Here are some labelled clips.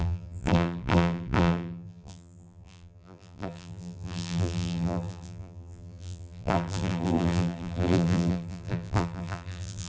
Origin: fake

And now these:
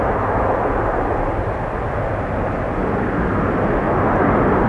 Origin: real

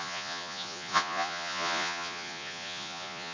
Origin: fake